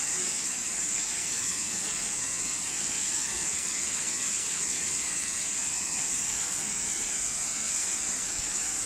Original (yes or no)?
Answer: no